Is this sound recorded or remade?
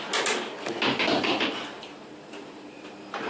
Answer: remade